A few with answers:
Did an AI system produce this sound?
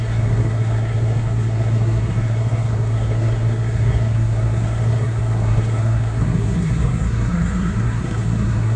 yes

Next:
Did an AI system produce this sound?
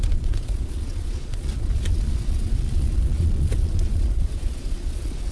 yes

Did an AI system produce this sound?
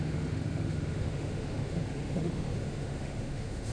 yes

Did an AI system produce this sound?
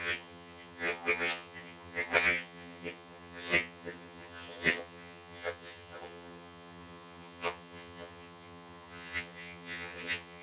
yes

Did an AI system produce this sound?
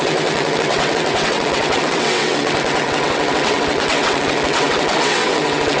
yes